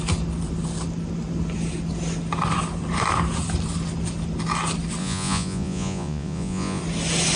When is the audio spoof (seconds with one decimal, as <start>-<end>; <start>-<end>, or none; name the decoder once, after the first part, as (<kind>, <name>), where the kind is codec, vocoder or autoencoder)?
5.0-6.8 (vocoder, Vocos)